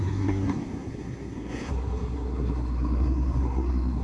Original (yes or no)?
no